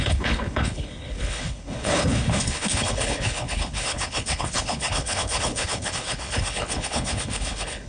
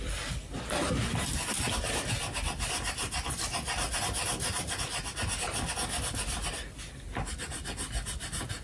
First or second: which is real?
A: second